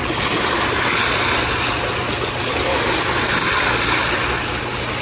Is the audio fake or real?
real